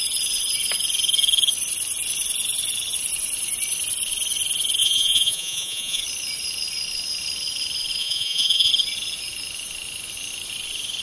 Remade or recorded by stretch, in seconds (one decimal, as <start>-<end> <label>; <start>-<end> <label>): 0.0-4.8 recorded; 4.8-6.0 remade; 6.0-8.0 recorded; 8.0-8.7 remade; 8.7-11.0 recorded